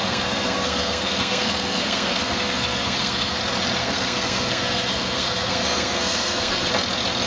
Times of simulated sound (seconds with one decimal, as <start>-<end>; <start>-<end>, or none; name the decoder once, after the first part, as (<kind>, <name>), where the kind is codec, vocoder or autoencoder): 0.0-3.4 (codec, SNAC); 3.8-6.7